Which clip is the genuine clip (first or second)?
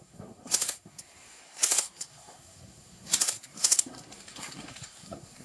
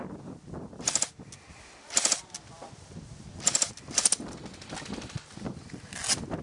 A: second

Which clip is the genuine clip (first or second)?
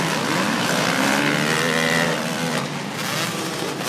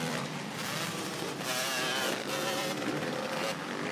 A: first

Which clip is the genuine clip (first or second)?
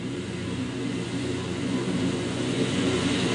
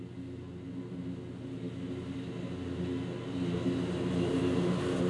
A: second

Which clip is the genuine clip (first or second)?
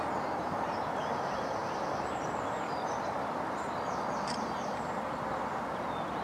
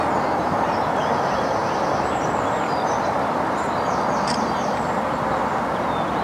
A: second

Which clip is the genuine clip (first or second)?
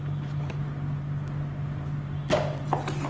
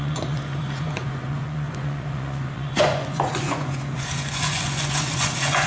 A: first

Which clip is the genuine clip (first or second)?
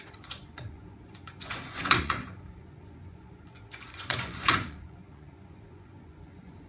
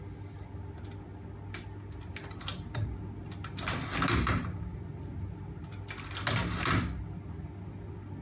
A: second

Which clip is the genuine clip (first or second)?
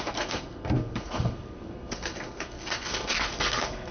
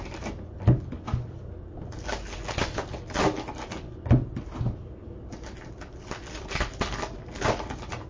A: second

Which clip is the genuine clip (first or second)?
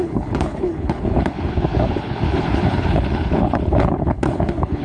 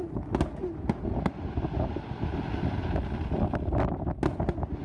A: second